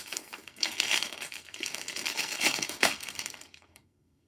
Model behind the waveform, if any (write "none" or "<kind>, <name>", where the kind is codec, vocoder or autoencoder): codec, SNAC